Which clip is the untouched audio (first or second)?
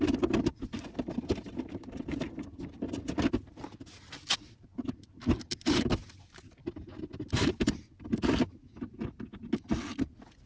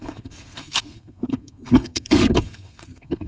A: first